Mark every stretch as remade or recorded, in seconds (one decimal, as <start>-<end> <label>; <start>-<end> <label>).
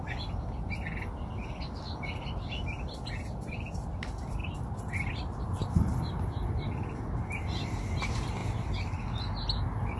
0.0-10.0 recorded